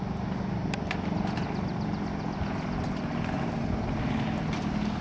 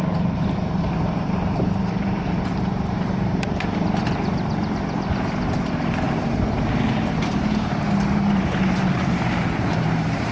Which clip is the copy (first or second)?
second